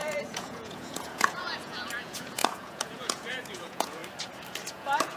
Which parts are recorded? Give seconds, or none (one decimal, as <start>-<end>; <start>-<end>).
4.0-4.7